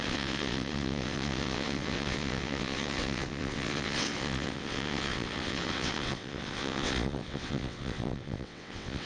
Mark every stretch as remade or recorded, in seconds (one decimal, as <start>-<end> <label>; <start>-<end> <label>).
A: 0.0-9.1 remade